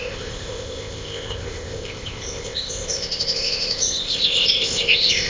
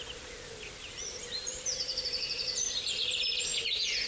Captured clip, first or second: second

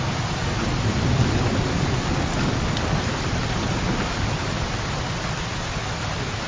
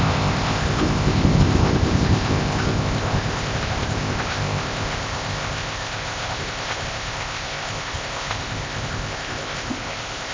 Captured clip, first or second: first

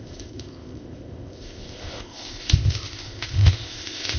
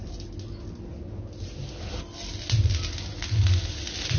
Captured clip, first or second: second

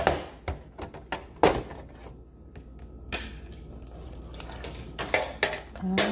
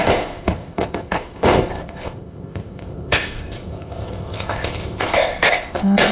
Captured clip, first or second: first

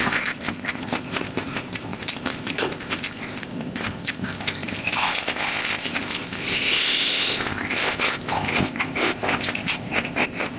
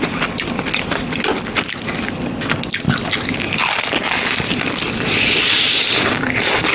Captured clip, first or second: second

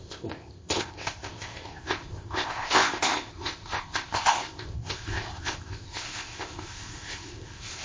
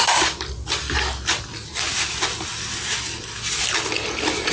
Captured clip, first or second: second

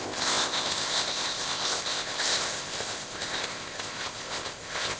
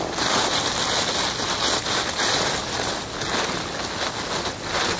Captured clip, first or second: second